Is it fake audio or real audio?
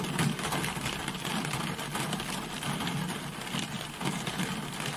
real